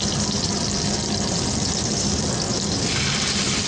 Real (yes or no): yes